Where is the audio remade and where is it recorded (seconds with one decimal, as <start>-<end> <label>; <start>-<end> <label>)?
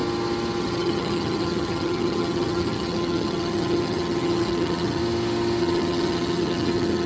0.0-0.6 recorded; 0.6-5.0 remade; 5.0-5.6 recorded; 5.6-7.1 remade